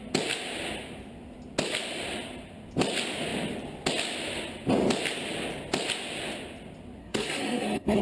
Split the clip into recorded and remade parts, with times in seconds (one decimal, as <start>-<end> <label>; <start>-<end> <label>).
0.0-7.0 recorded; 7.0-8.0 remade